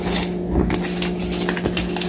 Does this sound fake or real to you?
real